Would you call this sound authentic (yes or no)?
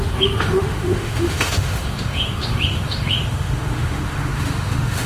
no